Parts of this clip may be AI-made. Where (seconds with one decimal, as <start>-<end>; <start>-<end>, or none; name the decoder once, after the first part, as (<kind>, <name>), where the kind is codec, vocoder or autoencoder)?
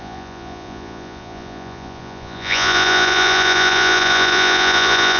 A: 0.0-5.2 (vocoder, Vocos)